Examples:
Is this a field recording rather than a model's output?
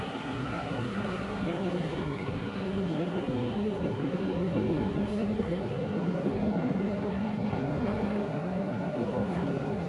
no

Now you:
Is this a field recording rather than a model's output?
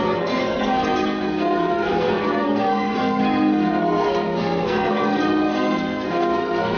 no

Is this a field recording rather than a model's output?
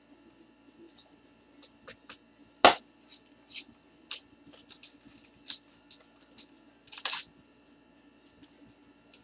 yes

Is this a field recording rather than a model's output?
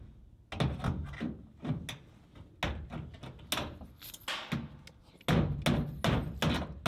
yes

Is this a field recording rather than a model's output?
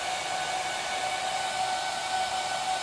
yes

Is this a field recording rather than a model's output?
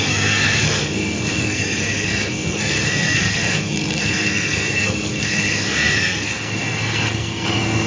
no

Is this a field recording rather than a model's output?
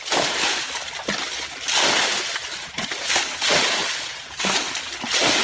yes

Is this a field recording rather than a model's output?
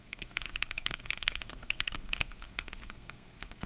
no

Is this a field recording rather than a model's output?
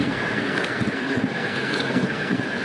no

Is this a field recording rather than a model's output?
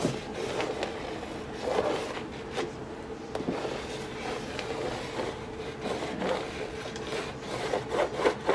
yes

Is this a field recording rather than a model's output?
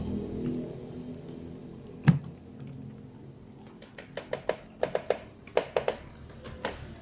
yes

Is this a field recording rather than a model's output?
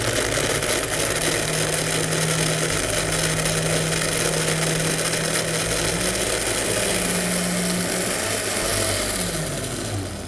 yes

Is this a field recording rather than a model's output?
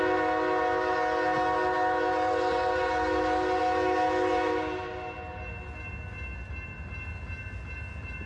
yes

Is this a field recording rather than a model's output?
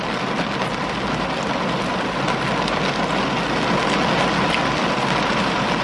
yes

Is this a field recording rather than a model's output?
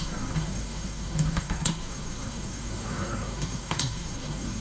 no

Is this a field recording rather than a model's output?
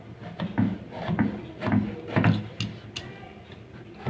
yes